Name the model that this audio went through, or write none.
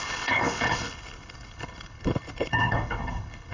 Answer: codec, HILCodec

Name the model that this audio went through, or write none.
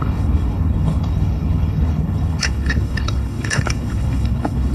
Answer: codec, HILCodec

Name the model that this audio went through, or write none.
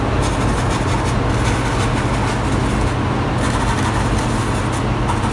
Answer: none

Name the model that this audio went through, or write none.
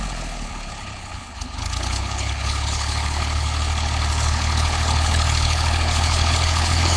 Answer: codec, HILCodec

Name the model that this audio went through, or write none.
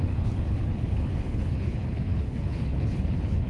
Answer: codec, HILCodec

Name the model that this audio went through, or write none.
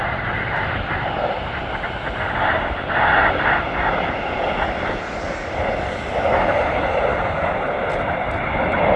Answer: none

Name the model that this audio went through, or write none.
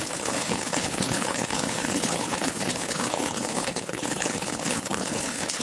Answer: codec, HILCodec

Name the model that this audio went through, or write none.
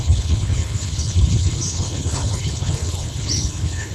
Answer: codec, HILCodec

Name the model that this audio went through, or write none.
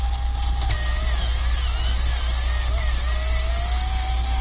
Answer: none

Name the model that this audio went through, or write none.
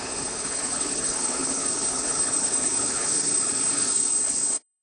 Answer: codec, HILCodec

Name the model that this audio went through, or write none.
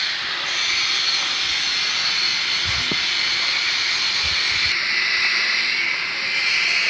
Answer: none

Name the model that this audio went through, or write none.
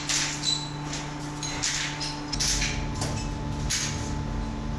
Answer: none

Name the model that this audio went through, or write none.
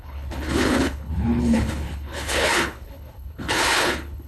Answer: codec, HILCodec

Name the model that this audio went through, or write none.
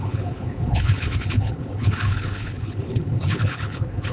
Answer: codec, HILCodec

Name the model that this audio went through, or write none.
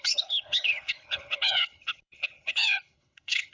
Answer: codec, HILCodec